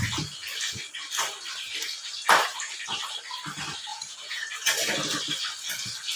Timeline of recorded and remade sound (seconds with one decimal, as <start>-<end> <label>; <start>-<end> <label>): 0.0-3.9 recorded; 3.9-4.4 remade; 4.4-6.2 recorded